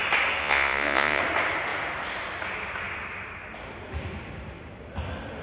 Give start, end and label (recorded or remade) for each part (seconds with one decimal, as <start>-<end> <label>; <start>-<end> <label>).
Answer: 0.0-0.4 recorded; 0.4-1.2 remade; 1.2-5.4 recorded